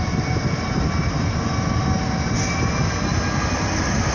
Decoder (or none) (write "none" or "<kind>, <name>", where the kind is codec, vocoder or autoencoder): none